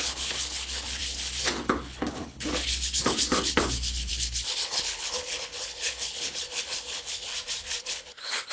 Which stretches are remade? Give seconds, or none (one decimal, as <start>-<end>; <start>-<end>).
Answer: 0.0-7.3; 7.8-8.5